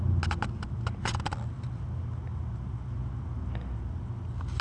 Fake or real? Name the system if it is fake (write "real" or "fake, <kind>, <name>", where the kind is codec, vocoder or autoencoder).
real